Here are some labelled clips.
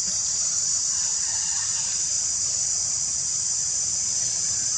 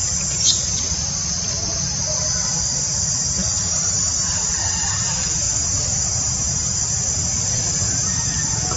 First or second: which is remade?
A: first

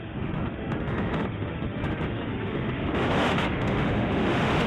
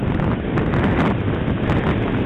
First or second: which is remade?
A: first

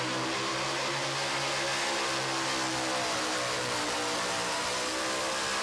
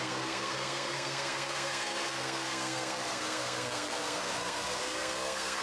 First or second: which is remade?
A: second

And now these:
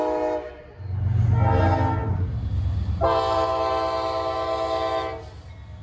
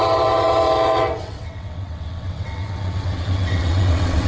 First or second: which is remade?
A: second